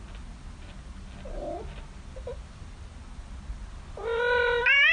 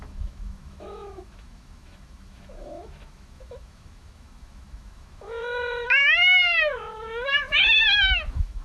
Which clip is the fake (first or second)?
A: second